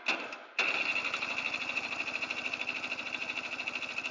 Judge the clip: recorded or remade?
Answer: recorded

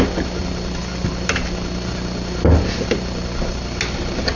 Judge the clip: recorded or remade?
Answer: recorded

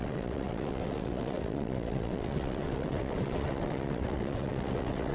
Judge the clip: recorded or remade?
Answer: remade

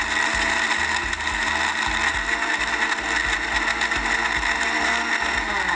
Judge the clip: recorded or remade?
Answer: recorded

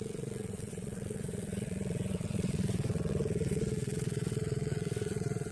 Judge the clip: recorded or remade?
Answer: remade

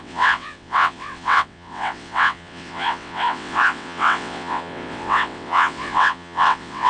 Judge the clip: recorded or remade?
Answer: remade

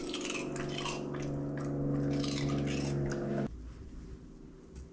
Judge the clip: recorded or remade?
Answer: recorded